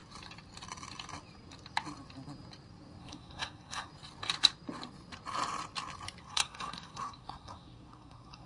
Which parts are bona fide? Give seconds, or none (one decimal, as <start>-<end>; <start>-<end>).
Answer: 0.0-3.0; 3.9-6.2